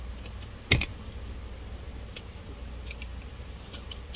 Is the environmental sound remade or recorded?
recorded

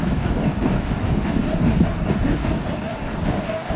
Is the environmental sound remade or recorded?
remade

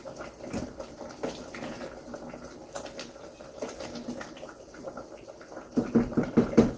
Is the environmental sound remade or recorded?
recorded